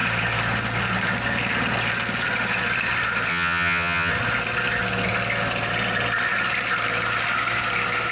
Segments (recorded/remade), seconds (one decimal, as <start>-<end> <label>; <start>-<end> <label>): 0.0-3.3 recorded; 3.3-4.1 remade; 4.1-8.1 recorded

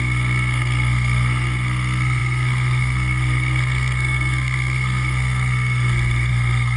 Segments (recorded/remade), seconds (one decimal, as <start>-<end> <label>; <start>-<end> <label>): 0.0-6.8 remade

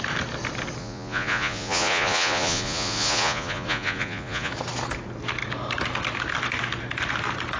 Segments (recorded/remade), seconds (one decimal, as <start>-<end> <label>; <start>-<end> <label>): 0.0-0.8 recorded; 0.8-4.5 remade; 4.5-7.6 recorded

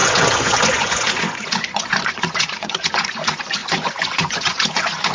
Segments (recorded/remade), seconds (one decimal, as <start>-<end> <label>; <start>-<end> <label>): 0.0-5.1 remade

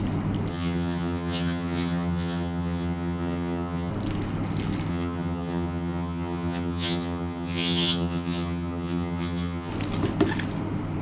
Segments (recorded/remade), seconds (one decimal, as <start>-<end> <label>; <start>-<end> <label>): 0.0-0.5 recorded; 0.5-3.9 remade; 3.9-4.9 recorded; 4.9-9.7 remade; 9.7-11.0 recorded

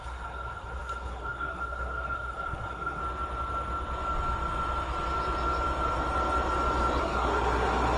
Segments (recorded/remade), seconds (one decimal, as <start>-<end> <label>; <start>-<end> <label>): 0.0-3.0 remade; 3.0-7.0 recorded; 7.0-8.0 remade